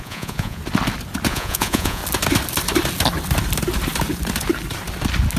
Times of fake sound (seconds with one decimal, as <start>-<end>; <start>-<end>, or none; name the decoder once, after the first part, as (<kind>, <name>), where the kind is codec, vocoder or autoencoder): 0.0-0.6 (vocoder, Vocos); 1.3-2.0